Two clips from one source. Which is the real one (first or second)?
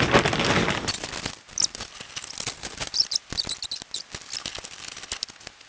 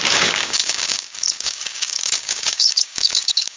first